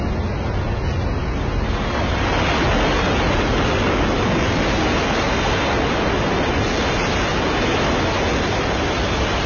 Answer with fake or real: real